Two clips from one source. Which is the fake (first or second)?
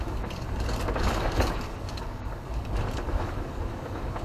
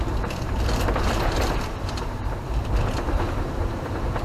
first